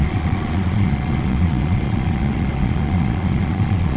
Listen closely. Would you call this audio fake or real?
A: fake